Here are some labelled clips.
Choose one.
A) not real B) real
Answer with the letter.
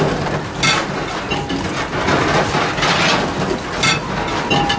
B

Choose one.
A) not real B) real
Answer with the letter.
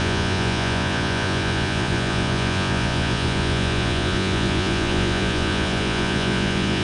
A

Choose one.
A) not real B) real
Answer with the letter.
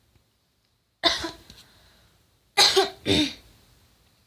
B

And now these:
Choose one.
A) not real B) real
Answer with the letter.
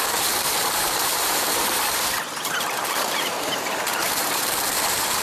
A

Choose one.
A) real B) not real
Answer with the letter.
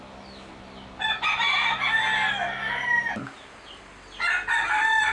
A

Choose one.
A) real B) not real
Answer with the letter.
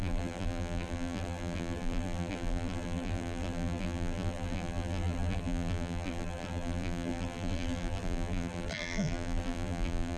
B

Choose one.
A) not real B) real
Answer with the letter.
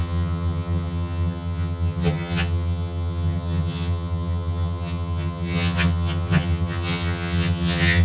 A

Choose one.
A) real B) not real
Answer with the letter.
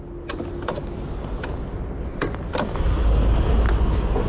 A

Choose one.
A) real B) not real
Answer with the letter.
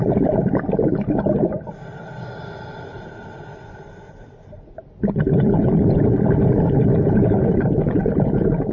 A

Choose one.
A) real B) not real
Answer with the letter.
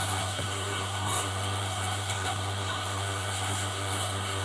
B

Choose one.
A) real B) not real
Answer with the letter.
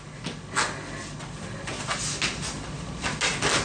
A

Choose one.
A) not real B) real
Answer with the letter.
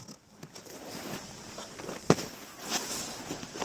B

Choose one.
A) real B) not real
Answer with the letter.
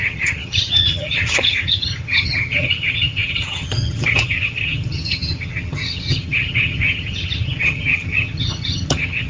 B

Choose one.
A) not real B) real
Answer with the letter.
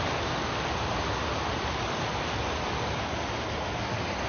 B